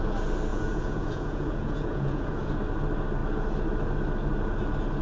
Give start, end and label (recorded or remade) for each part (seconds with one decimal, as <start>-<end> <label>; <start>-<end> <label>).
0.0-0.5 recorded; 0.5-2.5 remade; 2.5-5.0 recorded